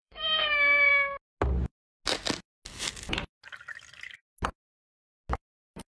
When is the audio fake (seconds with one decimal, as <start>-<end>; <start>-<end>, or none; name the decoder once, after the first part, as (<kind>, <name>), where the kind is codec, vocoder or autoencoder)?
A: 0.0-0.9 (codec, SNAC)